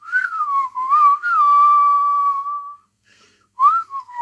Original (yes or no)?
no